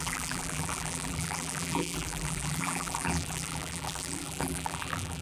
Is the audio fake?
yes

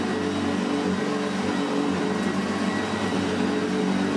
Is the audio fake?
no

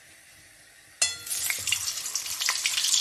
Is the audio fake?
no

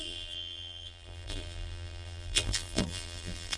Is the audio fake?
yes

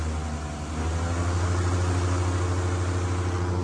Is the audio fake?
no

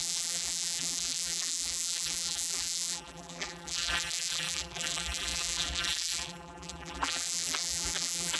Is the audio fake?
yes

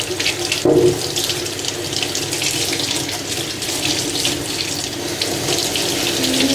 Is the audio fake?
no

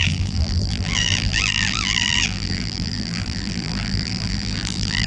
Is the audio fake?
yes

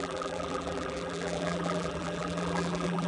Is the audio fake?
yes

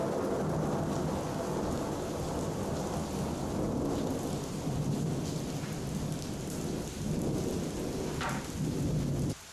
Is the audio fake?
no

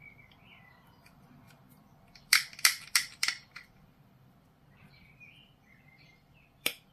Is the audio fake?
yes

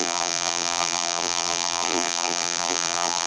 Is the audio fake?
yes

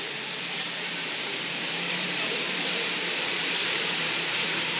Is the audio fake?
yes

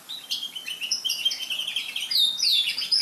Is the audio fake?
yes